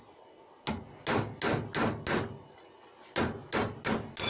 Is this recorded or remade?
recorded